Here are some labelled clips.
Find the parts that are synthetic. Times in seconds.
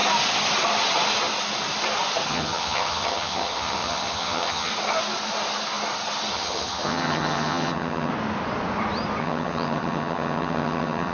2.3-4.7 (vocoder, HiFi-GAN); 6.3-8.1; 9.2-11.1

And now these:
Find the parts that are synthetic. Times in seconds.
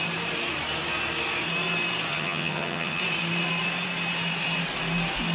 2.1-3.0 (vocoder, HiFi-GAN)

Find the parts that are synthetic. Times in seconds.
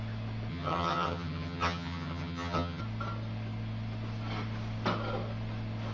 0.5-2.8 (vocoder, HiFi-GAN)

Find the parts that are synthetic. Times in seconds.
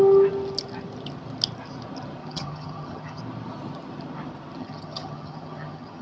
2.2-3.2 (vocoder, HiFi-GAN); 4.6-6.0